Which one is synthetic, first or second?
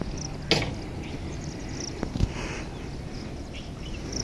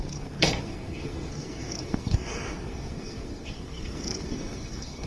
second